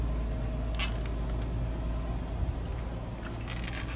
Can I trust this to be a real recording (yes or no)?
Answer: yes